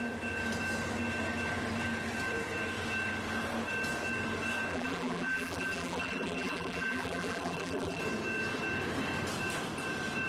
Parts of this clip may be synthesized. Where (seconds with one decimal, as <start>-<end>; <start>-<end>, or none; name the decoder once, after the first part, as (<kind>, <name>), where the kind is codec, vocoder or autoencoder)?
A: 4.7-8.0 (vocoder, BigVGAN v2)